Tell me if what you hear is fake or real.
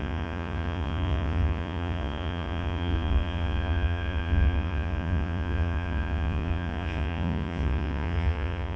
fake